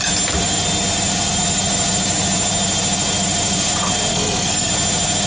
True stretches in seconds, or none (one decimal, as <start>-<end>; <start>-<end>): 0.0-4.1; 4.7-5.3